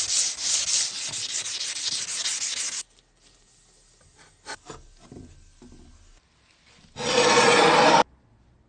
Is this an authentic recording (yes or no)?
yes